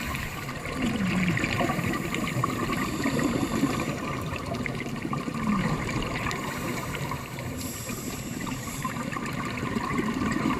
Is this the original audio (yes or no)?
no